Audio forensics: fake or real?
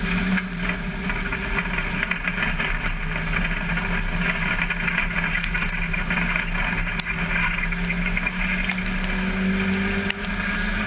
real